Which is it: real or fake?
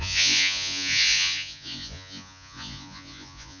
fake